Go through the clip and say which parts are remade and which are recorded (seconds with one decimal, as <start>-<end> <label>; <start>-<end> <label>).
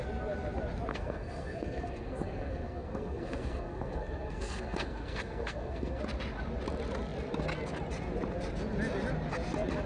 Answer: 0.0-0.9 recorded; 0.9-6.0 remade; 6.0-9.9 recorded